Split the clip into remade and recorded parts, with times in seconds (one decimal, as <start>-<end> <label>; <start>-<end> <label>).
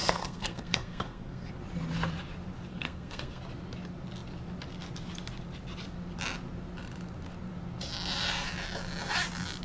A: 0.0-1.5 remade; 1.5-2.7 recorded; 2.7-3.4 remade; 3.4-9.6 recorded